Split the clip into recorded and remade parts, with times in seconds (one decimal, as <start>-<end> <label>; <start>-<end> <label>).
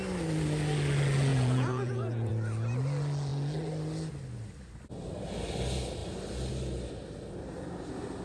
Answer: 0.0-1.3 recorded; 1.3-2.3 remade; 2.3-8.2 recorded